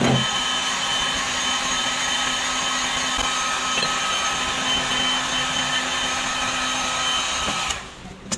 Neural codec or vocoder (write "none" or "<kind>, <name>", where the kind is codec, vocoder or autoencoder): none